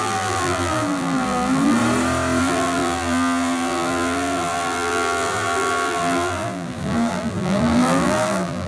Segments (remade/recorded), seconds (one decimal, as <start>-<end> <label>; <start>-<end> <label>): 0.0-1.8 remade; 1.8-2.4 recorded; 2.4-8.7 remade